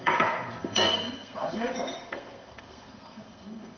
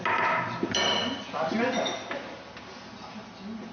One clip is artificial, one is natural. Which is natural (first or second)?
second